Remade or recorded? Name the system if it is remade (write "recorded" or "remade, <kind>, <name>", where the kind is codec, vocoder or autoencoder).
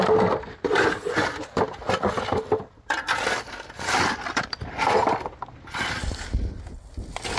recorded